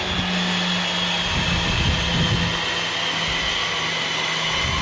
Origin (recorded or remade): recorded